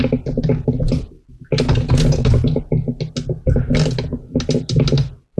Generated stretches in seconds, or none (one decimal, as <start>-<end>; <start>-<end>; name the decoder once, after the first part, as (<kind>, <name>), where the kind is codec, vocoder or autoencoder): none